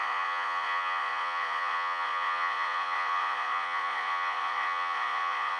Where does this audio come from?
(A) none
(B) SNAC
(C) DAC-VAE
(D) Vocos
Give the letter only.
D